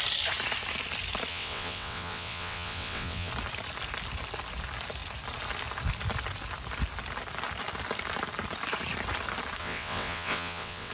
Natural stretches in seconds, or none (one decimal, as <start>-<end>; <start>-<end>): 0.0-1.3; 3.3-9.6